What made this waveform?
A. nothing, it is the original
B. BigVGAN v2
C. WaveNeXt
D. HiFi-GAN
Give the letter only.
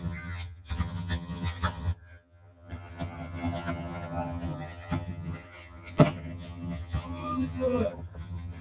D